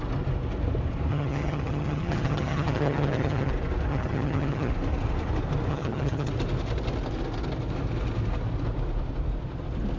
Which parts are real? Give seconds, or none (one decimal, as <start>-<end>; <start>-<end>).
0.0-1.1; 3.5-3.9; 4.7-5.7; 6.3-10.0